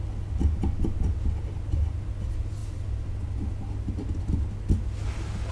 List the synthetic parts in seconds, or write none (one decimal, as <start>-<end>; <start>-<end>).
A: none